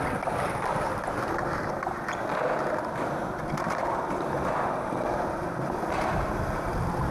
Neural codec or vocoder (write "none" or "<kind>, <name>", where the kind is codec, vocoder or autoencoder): none